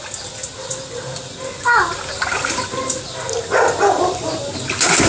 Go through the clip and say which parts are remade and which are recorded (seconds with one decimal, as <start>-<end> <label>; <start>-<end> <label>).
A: 0.0-5.1 recorded

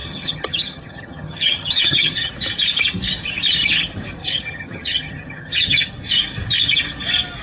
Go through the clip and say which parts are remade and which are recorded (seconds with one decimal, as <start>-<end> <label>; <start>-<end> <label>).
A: 0.0-2.3 remade; 2.3-4.2 recorded; 4.2-5.9 remade; 5.9-7.4 recorded